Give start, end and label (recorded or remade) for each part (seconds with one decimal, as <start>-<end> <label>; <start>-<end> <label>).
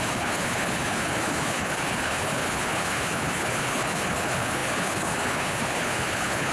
0.0-6.5 remade